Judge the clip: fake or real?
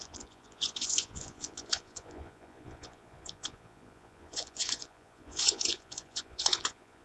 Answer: fake